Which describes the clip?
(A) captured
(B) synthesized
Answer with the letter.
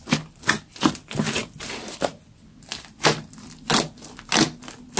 A